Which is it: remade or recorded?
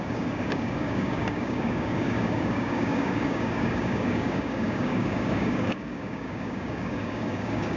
remade